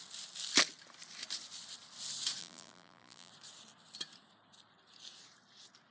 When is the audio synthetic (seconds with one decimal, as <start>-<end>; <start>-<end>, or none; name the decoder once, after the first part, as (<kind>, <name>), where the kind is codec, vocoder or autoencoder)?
2.4-3.3 (vocoder, BigVGAN v2)